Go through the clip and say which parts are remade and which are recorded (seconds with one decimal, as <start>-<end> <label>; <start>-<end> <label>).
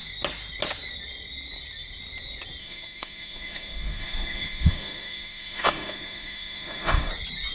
0.0-2.6 recorded; 2.6-7.1 remade; 7.1-7.5 recorded